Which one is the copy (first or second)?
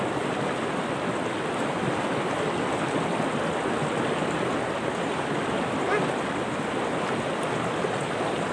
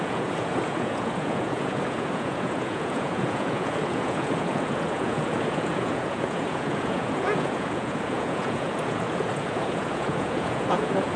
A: second